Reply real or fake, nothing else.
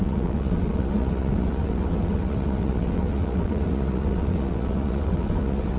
fake